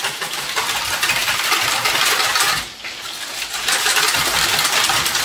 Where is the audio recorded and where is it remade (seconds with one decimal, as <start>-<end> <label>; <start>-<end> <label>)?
0.0-5.2 recorded